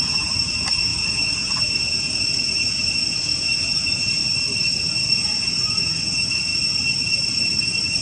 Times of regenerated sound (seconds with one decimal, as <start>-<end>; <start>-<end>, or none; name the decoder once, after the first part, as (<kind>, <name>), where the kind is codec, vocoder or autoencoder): 0.0-4.2 (vocoder, Vocos); 4.8-6.5